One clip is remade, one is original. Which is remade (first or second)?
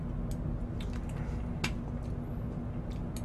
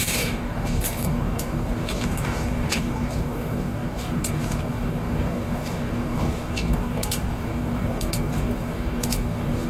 second